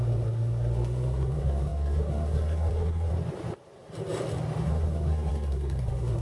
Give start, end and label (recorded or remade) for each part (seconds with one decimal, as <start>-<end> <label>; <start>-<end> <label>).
0.0-3.1 remade; 3.1-4.6 recorded; 4.6-6.2 remade